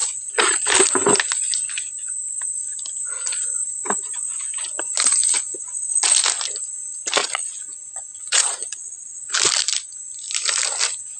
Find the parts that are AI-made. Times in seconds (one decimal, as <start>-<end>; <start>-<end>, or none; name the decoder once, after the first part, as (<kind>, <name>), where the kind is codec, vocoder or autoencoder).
7.2-9.3 (vocoder, Vocos)